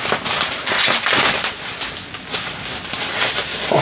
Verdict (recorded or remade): recorded